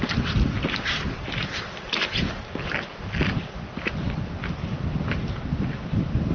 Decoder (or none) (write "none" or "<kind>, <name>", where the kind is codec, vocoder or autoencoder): vocoder, BigVGAN v2